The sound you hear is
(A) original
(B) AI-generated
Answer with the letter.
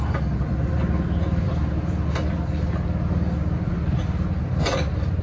A